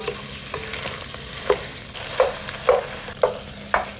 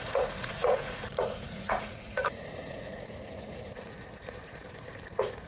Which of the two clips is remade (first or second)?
second